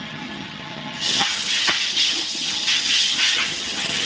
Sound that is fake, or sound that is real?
fake